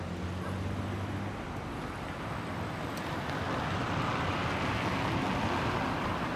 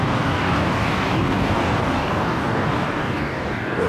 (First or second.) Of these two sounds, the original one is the first